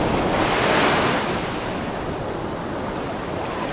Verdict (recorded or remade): recorded